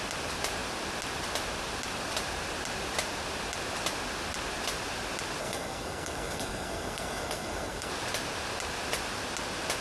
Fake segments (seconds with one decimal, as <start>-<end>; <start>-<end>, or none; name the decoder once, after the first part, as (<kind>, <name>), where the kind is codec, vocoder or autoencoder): 5.4-7.9 (codec, SNAC)